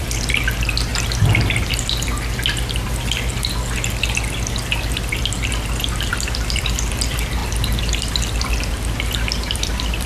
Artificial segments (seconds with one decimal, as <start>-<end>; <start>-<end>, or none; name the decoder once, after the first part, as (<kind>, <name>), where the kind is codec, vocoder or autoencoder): 0.0-0.9 (vocoder, BigVGAN v2); 6.1-10.1